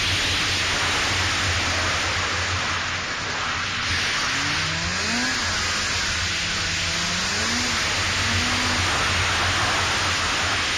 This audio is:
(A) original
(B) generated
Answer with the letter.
A